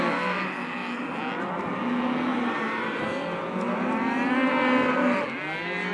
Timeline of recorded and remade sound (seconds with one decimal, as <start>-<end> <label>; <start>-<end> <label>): 0.0-2.3 recorded; 2.3-3.0 remade; 3.0-5.9 recorded

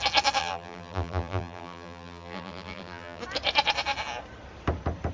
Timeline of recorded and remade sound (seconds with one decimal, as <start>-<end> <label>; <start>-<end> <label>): 0.0-0.4 recorded; 0.4-3.2 remade; 3.2-5.1 recorded

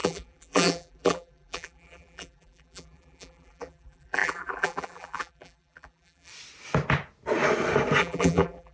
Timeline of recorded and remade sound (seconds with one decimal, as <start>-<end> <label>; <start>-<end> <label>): 0.0-6.3 remade; 6.3-8.0 recorded; 8.0-8.7 remade

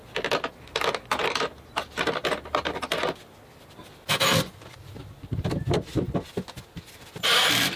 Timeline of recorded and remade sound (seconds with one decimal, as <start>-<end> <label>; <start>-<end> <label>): 0.0-0.5 remade; 0.5-1.2 recorded; 1.2-5.9 remade; 5.9-7.8 recorded

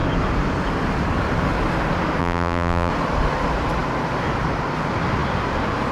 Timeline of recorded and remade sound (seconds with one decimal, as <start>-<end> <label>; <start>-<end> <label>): 0.0-2.2 recorded; 2.2-2.9 remade; 2.9-5.9 recorded